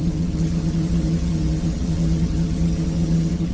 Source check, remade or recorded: remade